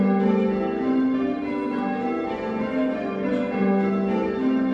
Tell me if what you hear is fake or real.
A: real